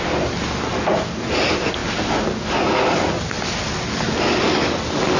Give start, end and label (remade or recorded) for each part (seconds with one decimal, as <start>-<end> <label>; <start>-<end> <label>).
0.0-5.2 recorded